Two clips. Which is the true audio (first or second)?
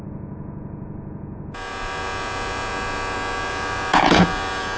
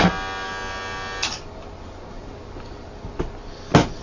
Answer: second